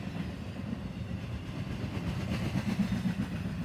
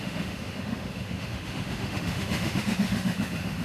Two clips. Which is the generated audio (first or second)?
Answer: second